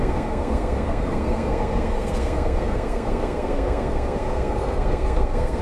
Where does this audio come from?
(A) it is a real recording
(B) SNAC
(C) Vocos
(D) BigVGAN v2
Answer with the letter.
B